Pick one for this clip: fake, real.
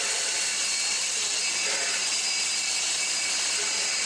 fake